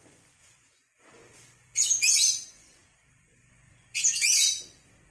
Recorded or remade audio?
remade